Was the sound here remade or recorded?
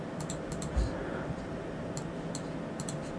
recorded